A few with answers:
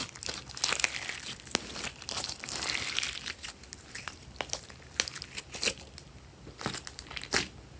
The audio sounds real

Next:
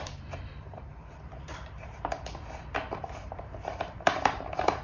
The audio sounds fake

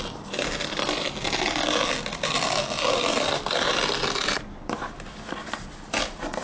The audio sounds fake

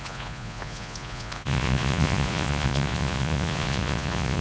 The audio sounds fake